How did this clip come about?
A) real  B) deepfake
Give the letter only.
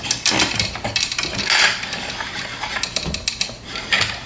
A